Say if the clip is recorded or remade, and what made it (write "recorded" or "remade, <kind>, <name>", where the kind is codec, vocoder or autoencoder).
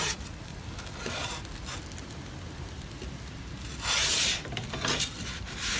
recorded